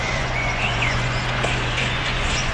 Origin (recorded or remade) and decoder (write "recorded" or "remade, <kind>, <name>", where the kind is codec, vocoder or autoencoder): remade, vocoder, Vocos